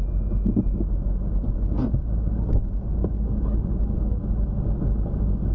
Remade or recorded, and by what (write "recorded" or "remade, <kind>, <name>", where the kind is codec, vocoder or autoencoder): recorded